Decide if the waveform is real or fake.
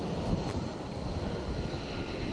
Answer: real